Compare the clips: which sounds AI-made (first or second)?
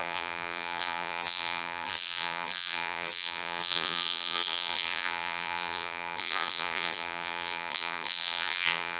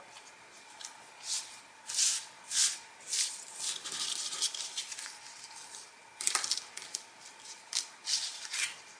first